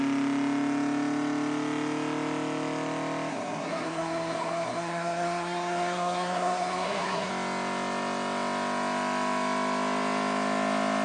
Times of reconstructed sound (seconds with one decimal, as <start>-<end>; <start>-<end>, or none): 3.3-7.3